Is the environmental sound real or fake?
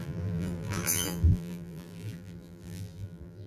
fake